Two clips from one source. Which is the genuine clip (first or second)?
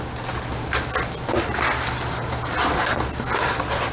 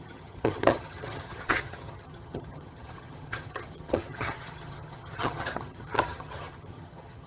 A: first